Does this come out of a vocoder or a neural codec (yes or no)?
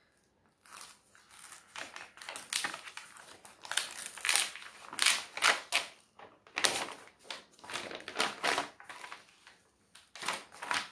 no